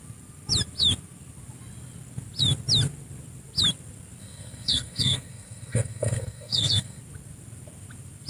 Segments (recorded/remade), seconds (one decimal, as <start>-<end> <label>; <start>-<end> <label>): 0.0-4.2 recorded; 4.2-7.0 remade; 7.0-8.3 recorded